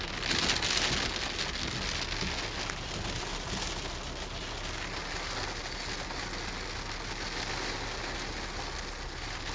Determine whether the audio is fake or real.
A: real